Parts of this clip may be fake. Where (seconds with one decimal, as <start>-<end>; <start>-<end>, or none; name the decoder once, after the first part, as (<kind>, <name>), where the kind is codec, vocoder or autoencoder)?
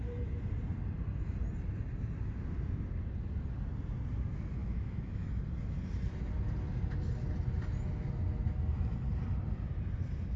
4.6-5.4 (autoencoder, DAC-VAE)